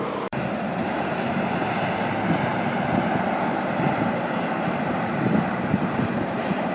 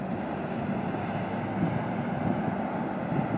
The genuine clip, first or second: second